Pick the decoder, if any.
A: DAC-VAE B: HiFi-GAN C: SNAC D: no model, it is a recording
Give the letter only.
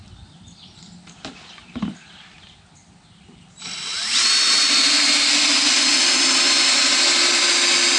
D